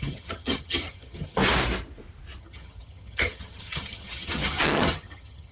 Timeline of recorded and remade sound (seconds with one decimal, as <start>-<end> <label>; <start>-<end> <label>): 0.0-1.4 remade; 1.4-2.4 recorded; 2.4-5.5 remade